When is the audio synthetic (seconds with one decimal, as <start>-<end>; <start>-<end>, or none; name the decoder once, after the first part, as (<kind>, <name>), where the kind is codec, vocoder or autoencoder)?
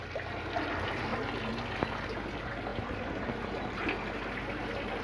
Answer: 2.7-3.3 (vocoder, BigVGAN v2)